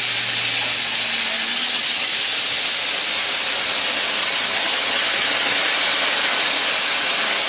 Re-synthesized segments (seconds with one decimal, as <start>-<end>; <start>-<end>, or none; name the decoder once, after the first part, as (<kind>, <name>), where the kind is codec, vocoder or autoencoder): 1.5-2.1 (vocoder, HiFi-GAN); 4.2-5.6